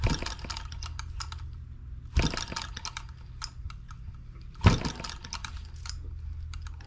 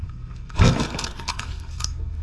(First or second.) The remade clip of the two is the second